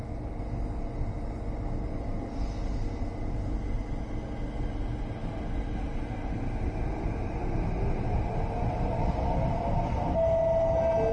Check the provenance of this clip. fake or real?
real